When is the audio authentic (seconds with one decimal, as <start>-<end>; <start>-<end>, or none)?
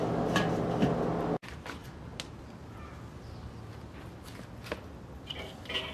0.0-5.9